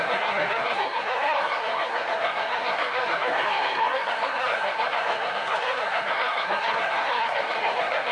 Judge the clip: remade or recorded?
remade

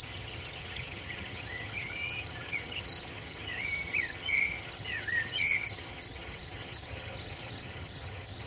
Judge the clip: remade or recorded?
remade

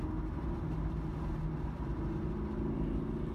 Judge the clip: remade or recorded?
recorded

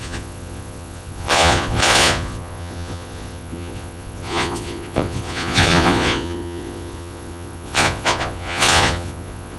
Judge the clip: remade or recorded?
remade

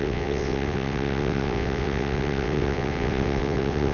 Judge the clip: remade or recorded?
remade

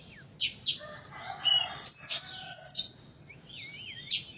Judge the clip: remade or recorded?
recorded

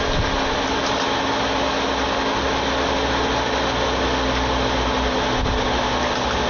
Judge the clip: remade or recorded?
recorded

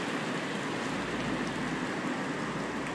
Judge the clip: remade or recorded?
recorded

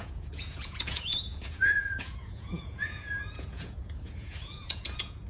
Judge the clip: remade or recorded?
remade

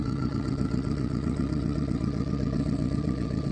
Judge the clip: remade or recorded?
remade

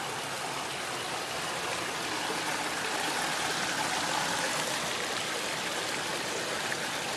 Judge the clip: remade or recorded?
recorded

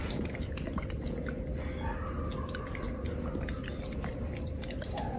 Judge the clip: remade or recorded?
recorded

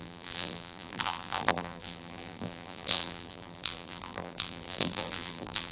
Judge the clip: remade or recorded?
remade